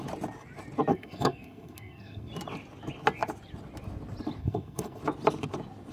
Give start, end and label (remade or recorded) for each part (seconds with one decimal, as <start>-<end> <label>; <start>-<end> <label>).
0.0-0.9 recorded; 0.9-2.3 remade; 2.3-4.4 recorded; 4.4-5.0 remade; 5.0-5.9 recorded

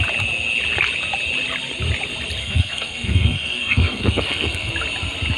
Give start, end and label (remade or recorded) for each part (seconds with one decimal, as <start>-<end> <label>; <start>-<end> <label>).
0.0-2.4 recorded; 2.4-4.7 remade; 4.7-5.4 recorded

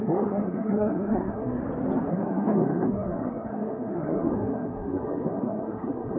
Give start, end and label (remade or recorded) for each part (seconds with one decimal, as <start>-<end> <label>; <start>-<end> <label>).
0.0-1.6 remade; 1.6-2.1 recorded; 2.1-6.2 remade

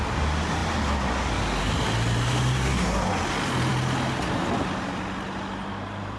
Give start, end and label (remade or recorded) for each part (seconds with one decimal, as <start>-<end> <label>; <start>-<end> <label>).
0.0-6.2 recorded

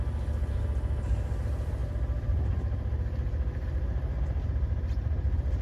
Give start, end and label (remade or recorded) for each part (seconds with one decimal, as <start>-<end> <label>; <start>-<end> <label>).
0.0-5.6 recorded